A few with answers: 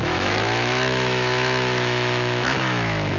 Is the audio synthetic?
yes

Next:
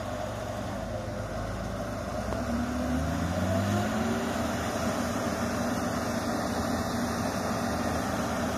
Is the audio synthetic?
no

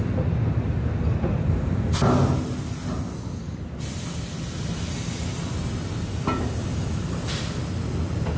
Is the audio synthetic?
no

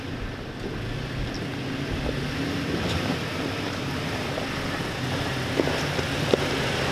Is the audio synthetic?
no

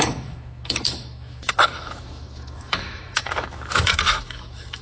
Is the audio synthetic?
yes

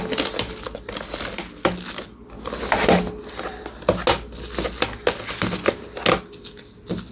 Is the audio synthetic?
no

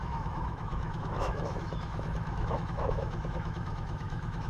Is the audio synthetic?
yes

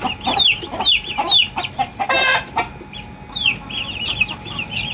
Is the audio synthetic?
no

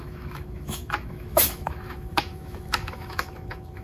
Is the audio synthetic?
yes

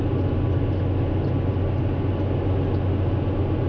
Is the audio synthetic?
no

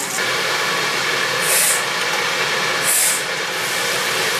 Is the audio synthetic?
no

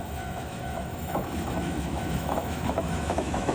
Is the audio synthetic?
yes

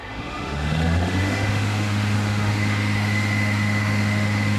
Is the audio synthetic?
yes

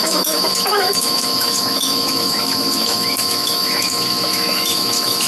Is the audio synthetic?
yes